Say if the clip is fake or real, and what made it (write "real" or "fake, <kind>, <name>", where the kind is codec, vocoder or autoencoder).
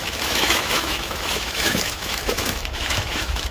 fake, autoencoder, DAC-VAE